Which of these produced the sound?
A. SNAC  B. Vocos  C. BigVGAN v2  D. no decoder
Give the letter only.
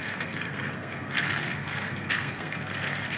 A